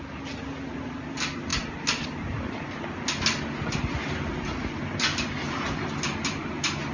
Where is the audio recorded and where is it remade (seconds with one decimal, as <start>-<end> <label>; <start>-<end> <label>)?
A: 0.0-6.9 recorded